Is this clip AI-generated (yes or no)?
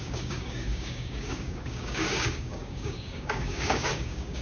yes